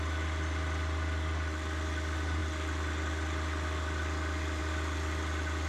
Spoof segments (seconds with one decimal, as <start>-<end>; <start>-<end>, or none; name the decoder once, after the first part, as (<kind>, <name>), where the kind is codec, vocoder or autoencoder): none